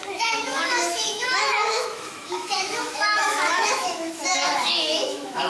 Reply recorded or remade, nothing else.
remade